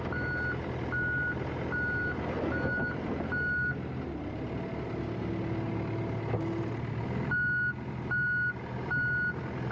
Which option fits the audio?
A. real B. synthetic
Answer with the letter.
A